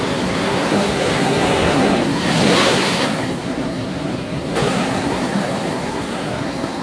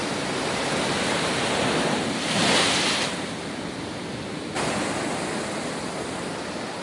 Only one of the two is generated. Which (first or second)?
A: first